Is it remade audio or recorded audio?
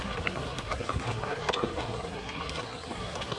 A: remade